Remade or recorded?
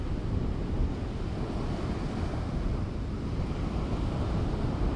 recorded